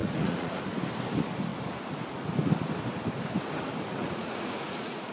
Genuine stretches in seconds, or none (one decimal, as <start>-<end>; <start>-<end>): 0.6-4.0